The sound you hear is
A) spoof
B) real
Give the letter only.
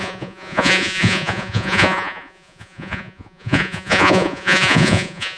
A